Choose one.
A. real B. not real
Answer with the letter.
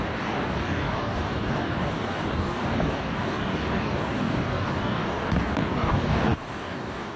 B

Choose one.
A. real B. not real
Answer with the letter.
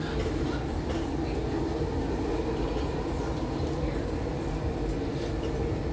A